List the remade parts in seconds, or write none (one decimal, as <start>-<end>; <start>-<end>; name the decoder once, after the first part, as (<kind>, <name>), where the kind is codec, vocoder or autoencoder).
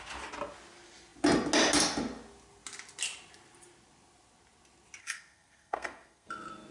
5.0-6.3 (codec, SNAC)